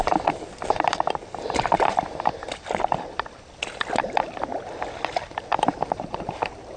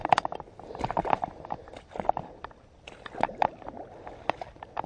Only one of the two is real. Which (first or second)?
second